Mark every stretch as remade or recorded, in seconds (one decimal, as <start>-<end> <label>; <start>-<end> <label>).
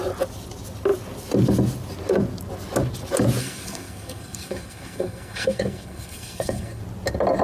0.0-3.4 recorded; 3.4-6.8 remade; 6.8-7.4 recorded